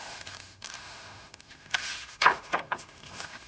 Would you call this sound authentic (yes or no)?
no